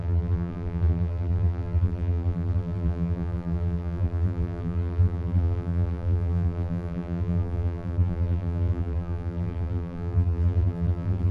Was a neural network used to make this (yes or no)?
yes